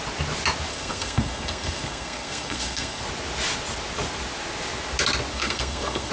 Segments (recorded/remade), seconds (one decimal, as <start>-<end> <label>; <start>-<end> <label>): 0.0-0.7 recorded; 0.7-3.0 remade; 3.0-5.3 recorded; 5.3-6.1 remade